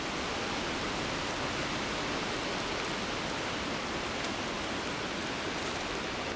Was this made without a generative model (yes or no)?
yes